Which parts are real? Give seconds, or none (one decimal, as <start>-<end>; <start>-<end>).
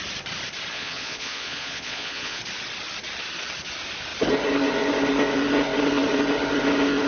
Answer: 0.0-0.7; 2.4-7.1